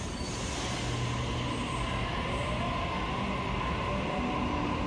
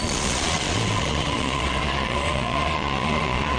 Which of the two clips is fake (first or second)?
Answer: second